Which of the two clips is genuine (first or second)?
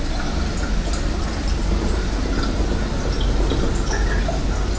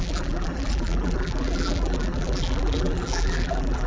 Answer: first